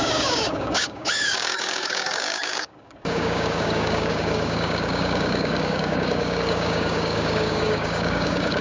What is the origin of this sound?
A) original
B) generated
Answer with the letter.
B